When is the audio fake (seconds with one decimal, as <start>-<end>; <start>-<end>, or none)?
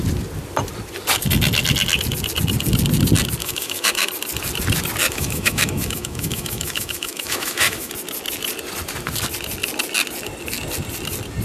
3.4-4.1; 5.0-7.9